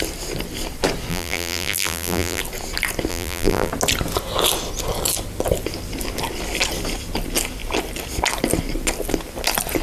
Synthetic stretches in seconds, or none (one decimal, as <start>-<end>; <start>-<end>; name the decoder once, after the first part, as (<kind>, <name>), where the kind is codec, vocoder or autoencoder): 1.1-2.4 (vocoder, BigVGAN v2); 3.1-3.7